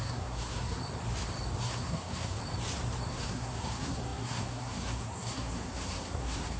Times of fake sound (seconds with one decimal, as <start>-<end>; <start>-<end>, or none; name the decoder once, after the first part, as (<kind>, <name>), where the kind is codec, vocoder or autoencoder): 0.0-0.8 (codec, SNAC); 1.6-2.4; 3.1-6.6